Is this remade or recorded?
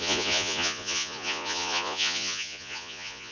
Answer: remade